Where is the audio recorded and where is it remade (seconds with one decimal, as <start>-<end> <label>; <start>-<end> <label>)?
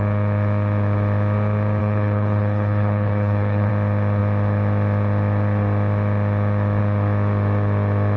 0.0-1.8 recorded; 1.8-3.7 remade; 3.7-8.2 recorded